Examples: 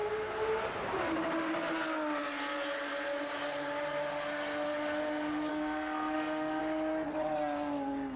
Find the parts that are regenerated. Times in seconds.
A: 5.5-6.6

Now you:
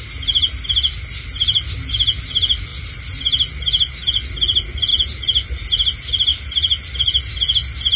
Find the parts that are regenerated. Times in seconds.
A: 4.9-5.7; 6.3-6.8

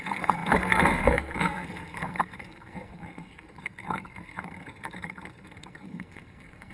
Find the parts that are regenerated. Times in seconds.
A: 0.0-6.7

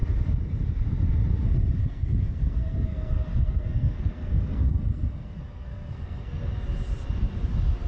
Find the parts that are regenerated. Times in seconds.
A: 1.8-6.5

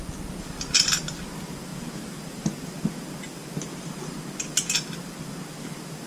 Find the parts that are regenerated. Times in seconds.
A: none